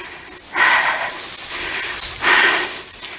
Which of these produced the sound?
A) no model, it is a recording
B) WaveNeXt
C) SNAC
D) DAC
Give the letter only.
A